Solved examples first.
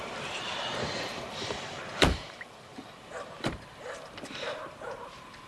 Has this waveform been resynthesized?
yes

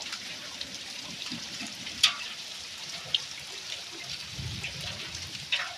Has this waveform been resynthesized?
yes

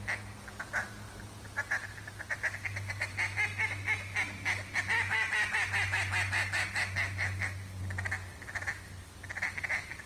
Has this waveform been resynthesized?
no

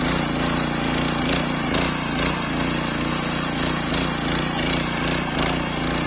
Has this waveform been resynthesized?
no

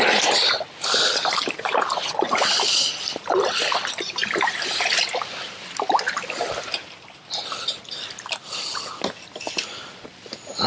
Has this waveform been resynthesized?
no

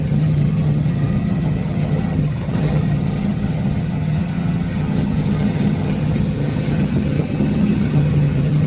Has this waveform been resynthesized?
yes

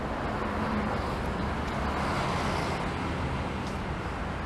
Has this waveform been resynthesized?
no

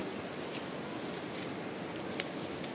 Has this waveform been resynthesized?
no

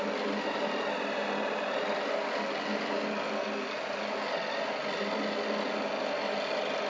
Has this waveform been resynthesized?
no